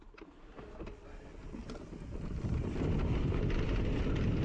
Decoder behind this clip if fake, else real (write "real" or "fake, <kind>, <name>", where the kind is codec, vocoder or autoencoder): real